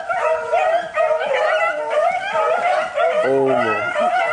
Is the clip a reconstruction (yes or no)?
no